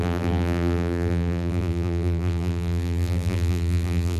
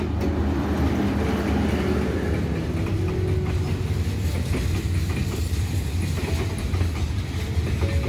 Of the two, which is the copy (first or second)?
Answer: first